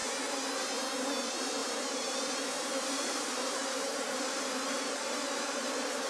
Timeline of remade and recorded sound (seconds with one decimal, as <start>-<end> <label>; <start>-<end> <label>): 0.0-1.2 recorded; 1.2-6.1 remade